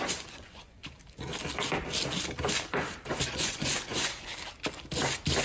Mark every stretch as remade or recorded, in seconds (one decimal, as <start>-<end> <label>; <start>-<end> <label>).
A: 0.0-0.8 remade; 0.8-3.3 recorded; 3.3-4.3 remade; 4.3-5.4 recorded